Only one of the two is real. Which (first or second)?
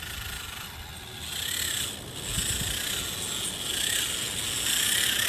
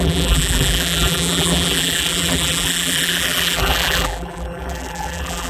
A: first